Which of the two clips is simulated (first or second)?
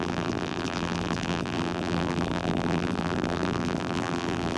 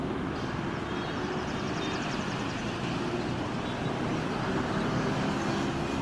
first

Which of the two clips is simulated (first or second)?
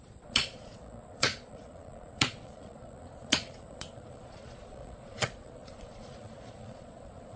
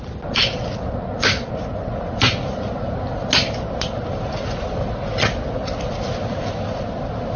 first